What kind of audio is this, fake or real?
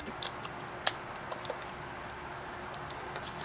real